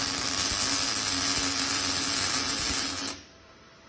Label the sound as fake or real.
real